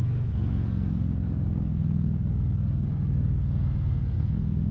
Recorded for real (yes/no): no